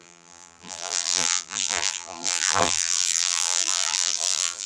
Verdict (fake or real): fake